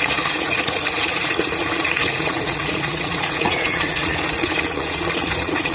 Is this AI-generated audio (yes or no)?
yes